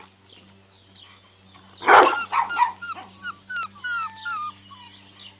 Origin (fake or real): real